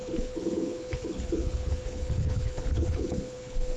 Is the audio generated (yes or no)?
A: yes